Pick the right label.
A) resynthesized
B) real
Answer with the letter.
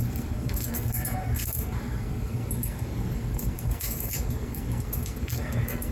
A